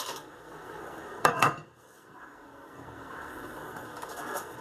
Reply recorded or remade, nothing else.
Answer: remade